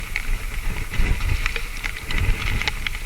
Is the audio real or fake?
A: real